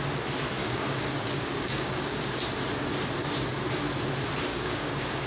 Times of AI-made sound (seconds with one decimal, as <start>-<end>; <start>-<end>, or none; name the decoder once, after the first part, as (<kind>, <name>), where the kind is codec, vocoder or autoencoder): 0.6-2.4 (codec, DAC); 4.5-5.3